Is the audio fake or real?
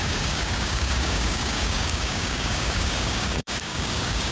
fake